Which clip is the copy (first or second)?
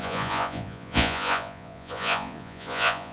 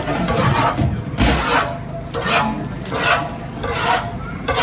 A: first